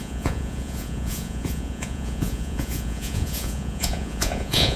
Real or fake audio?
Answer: fake